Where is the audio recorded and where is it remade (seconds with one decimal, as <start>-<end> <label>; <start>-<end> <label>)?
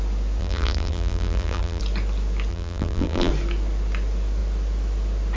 0.0-0.4 recorded; 0.4-1.8 remade; 1.8-2.5 recorded; 2.5-3.3 remade; 3.3-5.4 recorded